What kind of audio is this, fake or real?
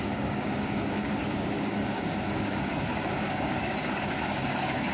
fake